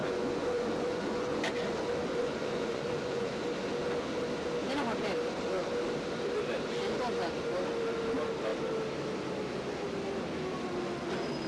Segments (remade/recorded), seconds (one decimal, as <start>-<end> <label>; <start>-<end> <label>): 0.0-1.4 remade; 1.4-2.2 recorded; 2.2-3.3 remade; 3.3-11.5 recorded